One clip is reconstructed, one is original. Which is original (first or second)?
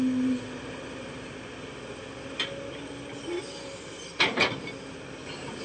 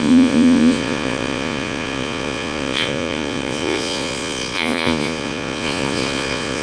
first